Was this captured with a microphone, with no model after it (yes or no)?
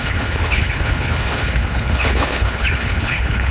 no